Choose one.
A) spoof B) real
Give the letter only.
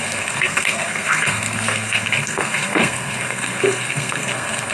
A